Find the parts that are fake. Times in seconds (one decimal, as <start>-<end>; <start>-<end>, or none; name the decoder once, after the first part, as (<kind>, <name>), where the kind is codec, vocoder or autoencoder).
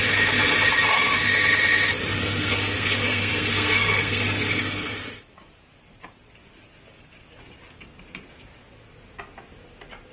2.2-4.9 (codec, SNAC)